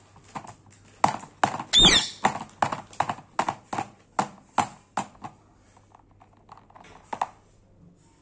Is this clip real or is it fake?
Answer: real